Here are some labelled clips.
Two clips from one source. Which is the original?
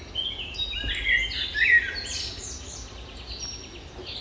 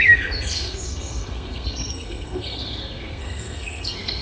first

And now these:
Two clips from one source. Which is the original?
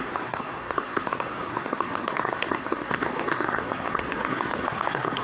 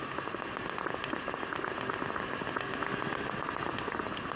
second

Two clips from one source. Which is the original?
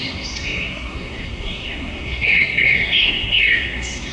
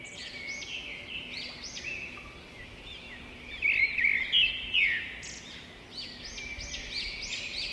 second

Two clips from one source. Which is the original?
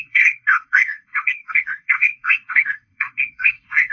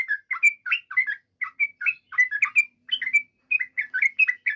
second